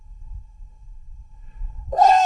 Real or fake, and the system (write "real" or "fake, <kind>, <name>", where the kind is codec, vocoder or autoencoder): fake, codec, SNAC